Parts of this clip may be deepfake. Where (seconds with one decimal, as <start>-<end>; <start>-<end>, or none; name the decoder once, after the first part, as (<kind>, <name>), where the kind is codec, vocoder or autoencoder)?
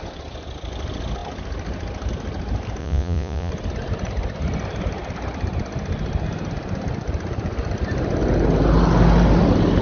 2.8-3.5 (vocoder, Vocos)